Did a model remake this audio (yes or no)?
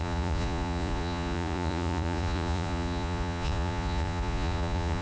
yes